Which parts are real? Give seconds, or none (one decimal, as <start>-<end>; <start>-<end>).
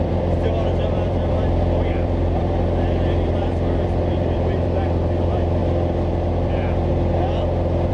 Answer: 5.6-6.3; 6.9-7.9